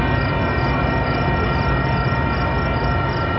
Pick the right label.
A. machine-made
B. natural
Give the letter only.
B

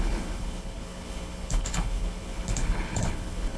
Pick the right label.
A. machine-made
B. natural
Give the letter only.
A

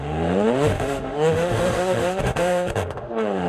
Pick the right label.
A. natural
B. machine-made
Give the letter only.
B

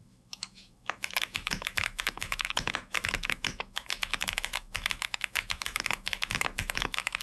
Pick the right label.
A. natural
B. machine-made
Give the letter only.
B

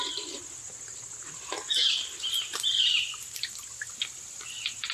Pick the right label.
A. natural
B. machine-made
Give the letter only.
A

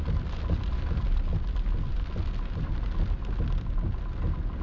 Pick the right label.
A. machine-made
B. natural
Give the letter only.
B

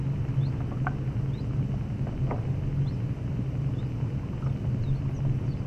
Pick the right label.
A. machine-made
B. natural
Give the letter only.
B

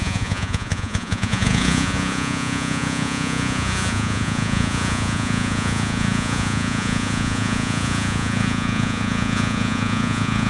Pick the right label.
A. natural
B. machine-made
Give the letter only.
B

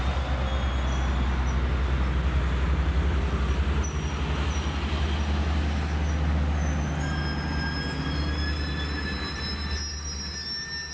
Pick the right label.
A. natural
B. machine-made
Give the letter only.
A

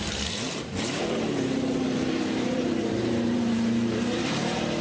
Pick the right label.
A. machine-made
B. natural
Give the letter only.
A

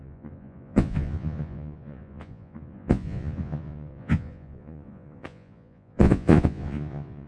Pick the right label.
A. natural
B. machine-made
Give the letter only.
B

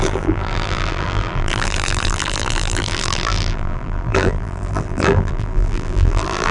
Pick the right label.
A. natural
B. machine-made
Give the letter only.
B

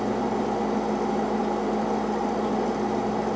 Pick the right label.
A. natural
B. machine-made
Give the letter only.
A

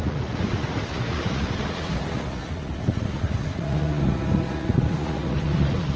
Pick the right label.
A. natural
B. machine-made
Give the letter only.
B